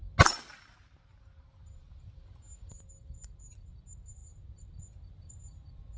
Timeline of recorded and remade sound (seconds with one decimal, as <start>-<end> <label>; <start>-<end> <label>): 0.0-6.0 recorded